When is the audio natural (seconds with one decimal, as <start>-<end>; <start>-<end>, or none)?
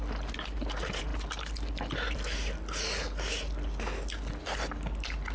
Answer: 0.0-5.3